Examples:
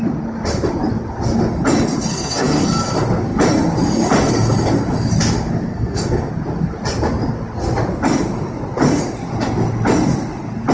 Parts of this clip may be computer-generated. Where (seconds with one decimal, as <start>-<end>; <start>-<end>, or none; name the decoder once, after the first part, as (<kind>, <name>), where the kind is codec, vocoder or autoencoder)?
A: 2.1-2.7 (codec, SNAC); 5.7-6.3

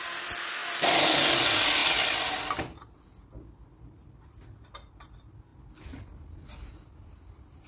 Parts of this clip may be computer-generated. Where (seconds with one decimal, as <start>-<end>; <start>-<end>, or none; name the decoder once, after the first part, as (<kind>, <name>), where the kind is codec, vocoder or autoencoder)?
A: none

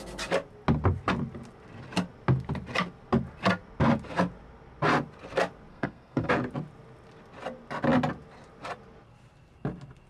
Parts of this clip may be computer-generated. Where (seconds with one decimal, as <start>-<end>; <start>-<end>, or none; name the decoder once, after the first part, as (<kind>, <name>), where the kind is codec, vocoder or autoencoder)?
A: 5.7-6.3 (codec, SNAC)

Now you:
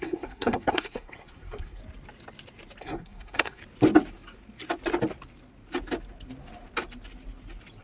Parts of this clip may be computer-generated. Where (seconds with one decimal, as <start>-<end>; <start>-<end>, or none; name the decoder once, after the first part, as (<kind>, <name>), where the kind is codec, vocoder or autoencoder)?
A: 0.0-1.8 (codec, SNAC); 2.8-3.6